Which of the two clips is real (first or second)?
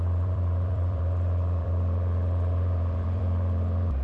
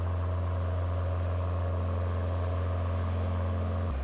second